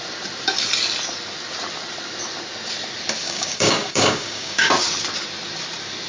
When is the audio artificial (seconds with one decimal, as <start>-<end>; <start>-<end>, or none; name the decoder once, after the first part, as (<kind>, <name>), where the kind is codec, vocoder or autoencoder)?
3.2-4.7 (codec, DAC)

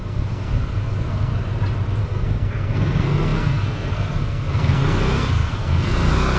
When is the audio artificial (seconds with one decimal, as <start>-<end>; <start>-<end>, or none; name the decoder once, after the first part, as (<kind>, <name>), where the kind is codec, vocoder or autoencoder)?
0.0-1.3 (codec, SNAC); 2.0-6.4

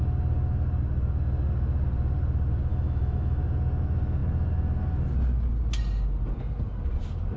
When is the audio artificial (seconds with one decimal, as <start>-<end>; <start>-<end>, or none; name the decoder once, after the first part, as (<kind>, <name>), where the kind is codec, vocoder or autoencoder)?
2.7-3.4 (autoencoder, DAC-VAE)

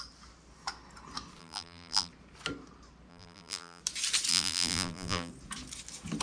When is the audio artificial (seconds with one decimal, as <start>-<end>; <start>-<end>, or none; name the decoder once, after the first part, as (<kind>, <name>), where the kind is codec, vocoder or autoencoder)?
1.4-2.1 (vocoder, BigVGAN v2); 3.1-3.8; 4.3-5.3